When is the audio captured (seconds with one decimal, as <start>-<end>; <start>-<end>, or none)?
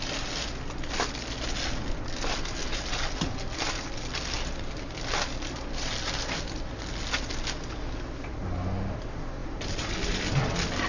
0.0-10.9